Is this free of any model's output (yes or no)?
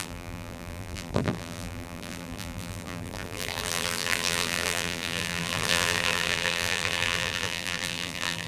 no